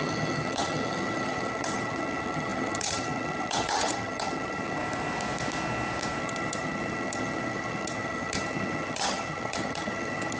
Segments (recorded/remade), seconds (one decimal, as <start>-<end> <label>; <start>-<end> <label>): 0.0-4.8 remade; 4.8-6.2 recorded; 6.2-10.4 remade

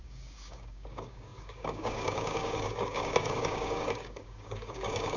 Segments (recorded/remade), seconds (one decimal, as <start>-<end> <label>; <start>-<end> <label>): 0.0-5.2 remade

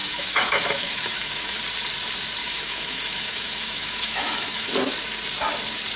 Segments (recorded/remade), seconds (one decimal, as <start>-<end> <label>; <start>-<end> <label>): 0.0-1.6 remade; 1.6-2.4 recorded; 2.4-4.7 remade; 4.7-6.0 recorded